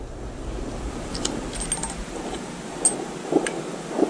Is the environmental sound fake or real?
real